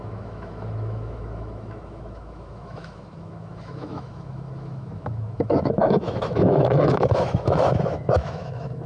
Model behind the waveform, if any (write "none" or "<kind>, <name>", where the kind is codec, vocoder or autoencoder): autoencoder, DAC-VAE